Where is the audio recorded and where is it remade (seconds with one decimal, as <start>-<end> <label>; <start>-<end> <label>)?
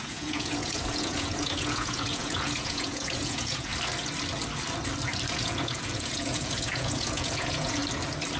0.0-3.7 remade; 3.7-5.3 recorded; 5.3-7.8 remade; 7.8-8.4 recorded